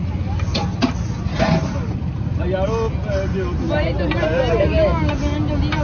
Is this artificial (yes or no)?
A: no